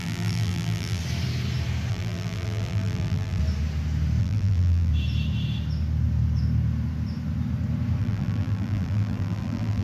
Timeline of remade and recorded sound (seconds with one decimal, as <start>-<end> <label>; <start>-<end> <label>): 0.0-1.0 remade; 1.0-1.9 recorded; 1.9-3.4 remade; 3.4-4.2 recorded; 4.2-4.9 remade; 4.9-8.0 recorded; 8.0-9.8 remade